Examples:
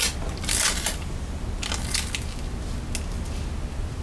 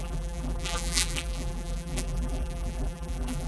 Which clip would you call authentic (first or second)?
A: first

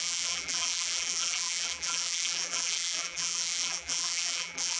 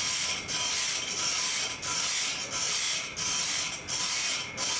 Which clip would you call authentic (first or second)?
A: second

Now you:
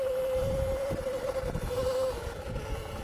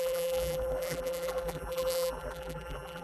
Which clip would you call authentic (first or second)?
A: first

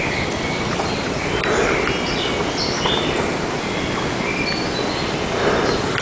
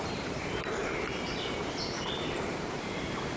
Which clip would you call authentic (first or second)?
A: first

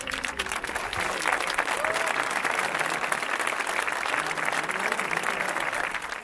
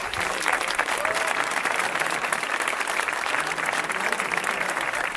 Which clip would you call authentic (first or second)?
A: first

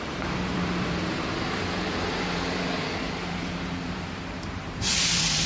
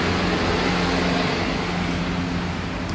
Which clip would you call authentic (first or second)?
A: second